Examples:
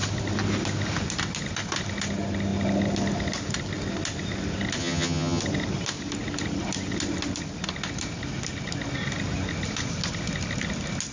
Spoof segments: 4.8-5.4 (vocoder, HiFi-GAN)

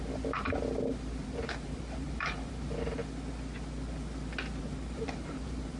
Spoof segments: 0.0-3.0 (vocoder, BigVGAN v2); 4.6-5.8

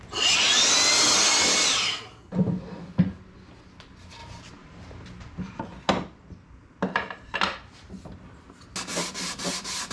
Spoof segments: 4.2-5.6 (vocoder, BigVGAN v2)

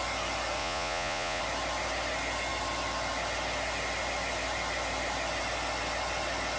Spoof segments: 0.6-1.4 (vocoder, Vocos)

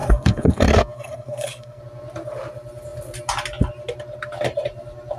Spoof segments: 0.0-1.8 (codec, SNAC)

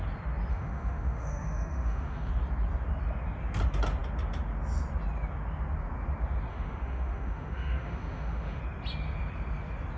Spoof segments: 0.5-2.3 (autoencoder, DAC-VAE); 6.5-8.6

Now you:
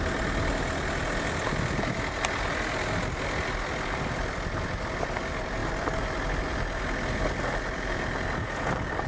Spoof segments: none